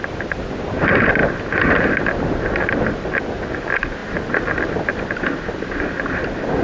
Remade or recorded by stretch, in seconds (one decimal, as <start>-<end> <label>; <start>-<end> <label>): 0.0-1.2 remade; 1.2-3.6 recorded; 3.6-6.6 remade